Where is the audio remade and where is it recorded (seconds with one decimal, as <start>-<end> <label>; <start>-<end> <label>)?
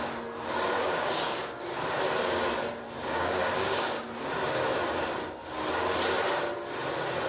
0.0-0.8 recorded; 0.8-1.5 remade; 1.5-3.0 recorded; 3.0-4.0 remade; 4.0-7.3 recorded